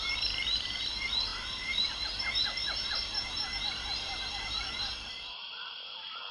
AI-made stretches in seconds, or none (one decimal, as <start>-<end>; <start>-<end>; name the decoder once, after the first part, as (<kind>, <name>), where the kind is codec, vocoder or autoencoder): 0.0-6.3 (vocoder, BigVGAN v2)